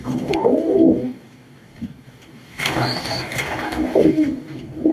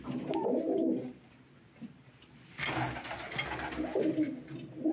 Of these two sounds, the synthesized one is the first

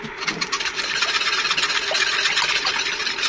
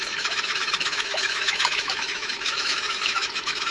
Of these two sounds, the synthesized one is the second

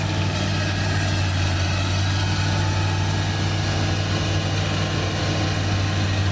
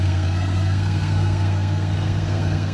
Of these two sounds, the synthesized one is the second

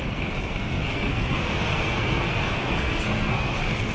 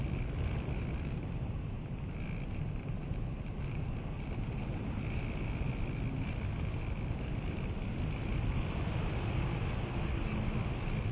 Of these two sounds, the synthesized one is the first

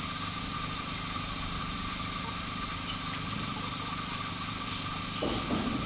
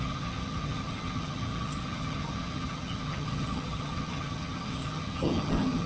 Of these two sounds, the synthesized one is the second